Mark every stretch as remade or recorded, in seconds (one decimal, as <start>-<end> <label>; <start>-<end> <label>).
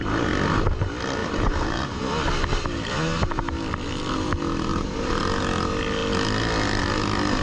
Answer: 0.0-1.2 recorded; 1.2-2.0 remade; 2.0-4.7 recorded; 4.7-5.2 remade; 5.2-7.4 recorded